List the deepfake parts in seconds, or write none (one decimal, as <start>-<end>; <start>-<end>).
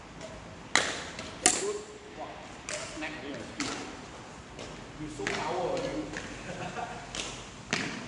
none